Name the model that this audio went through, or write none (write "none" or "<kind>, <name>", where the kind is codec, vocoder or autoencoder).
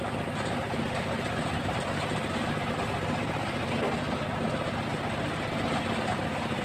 none